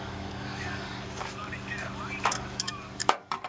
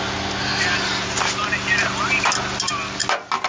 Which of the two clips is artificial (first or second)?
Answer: first